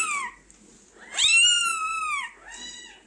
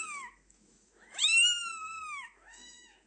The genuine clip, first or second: first